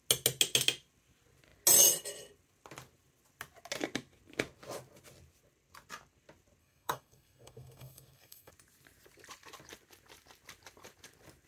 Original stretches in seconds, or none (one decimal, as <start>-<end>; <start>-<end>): 0.0-6.6; 8.5-11.5